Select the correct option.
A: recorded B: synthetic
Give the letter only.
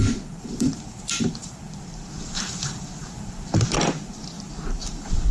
B